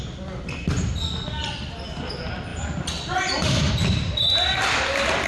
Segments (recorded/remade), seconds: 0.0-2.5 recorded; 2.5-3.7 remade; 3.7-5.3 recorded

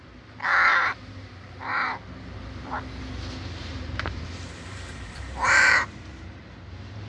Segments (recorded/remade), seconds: 0.0-0.7 recorded; 0.7-3.0 remade; 3.0-3.6 recorded; 3.6-6.6 remade; 6.6-7.1 recorded

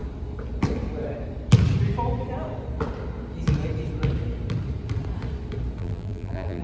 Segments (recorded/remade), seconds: 0.0-5.8 recorded; 5.8-6.6 remade

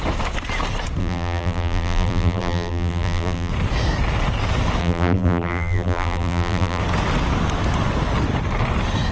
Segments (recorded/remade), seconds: 0.0-1.0 recorded; 1.0-3.5 remade; 3.5-4.8 recorded; 4.8-6.8 remade; 6.8-9.1 recorded

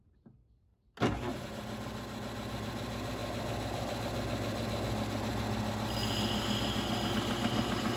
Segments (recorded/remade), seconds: 0.0-8.0 recorded

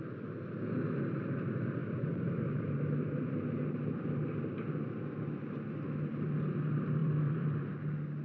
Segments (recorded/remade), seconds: 0.0-7.0 recorded; 7.0-7.7 remade; 7.7-8.2 recorded

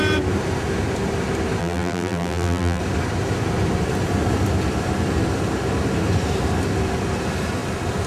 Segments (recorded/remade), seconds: 0.0-1.6 recorded; 1.6-2.8 remade; 2.8-8.1 recorded